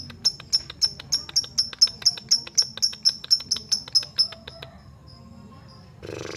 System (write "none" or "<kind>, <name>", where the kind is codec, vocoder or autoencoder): none